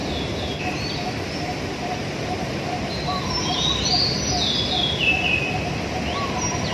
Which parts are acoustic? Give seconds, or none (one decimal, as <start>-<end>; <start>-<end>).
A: 0.0-6.7